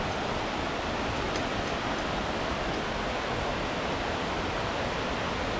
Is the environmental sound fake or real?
real